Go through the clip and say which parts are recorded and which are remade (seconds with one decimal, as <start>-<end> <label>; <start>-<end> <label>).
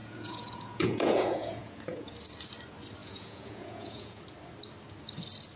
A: 0.0-2.1 remade; 2.1-3.0 recorded; 3.0-4.2 remade; 4.2-5.6 recorded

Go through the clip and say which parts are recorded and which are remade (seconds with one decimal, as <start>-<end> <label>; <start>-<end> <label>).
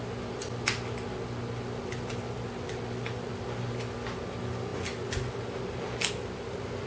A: 0.0-6.9 recorded